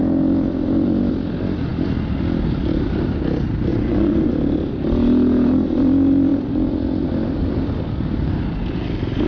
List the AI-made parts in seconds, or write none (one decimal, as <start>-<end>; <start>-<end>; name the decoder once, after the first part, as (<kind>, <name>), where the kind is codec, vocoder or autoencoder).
3.7-4.3 (vocoder, Vocos)